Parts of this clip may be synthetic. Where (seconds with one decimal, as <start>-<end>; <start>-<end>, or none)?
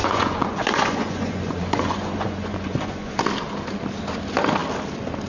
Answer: 0.0-3.2